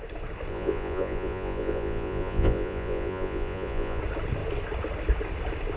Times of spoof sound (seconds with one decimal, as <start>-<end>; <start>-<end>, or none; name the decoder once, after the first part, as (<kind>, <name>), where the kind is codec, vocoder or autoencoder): 0.5-4.0 (vocoder, Vocos)